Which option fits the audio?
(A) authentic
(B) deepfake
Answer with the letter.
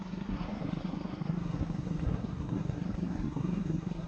B